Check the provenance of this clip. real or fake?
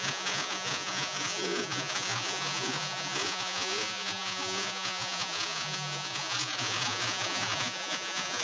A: fake